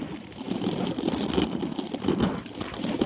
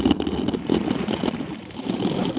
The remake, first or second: first